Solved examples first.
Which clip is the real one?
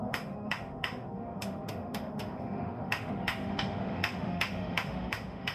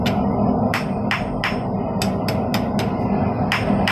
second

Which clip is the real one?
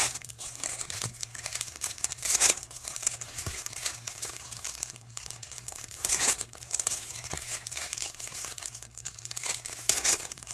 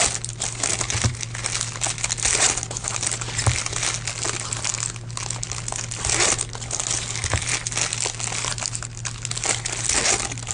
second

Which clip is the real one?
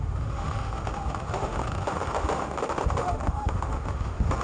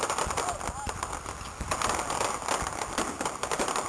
second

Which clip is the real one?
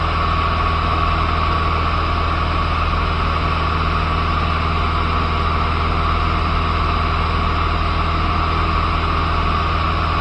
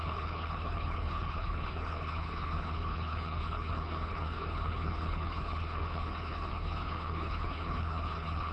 first